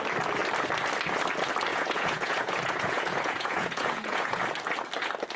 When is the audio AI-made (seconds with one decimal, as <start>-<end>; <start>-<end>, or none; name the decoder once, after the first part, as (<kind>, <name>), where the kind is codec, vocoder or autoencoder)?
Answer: 1.7-4.4 (vocoder, Vocos)

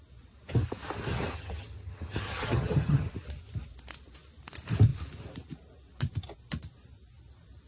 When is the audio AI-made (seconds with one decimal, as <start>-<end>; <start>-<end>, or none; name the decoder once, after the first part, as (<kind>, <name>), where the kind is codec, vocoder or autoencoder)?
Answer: 1.1-3.1 (vocoder, HiFi-GAN)

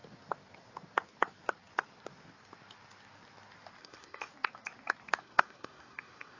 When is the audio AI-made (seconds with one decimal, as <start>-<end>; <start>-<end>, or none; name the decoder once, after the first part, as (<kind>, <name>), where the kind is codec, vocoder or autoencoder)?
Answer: 3.8-4.3 (codec, SNAC); 5.2-6.4